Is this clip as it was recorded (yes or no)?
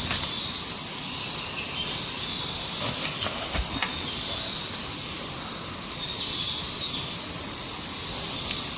yes